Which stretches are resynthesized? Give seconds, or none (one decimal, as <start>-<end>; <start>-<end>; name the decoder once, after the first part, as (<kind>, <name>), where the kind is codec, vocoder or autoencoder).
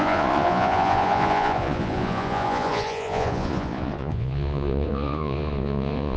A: 0.0-6.2 (vocoder, Vocos)